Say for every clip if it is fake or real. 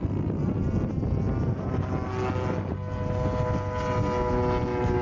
real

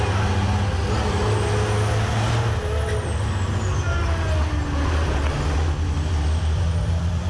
real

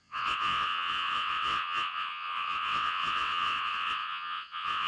fake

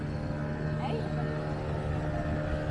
real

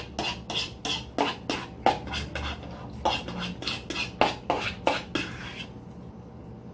real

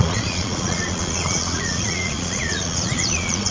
fake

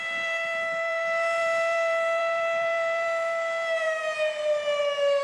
fake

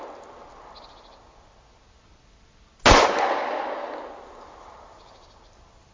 real